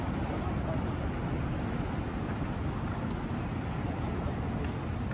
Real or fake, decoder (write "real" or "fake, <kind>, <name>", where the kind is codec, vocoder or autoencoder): real